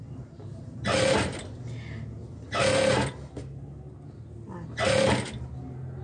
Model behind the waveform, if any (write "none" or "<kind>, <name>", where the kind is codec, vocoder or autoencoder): none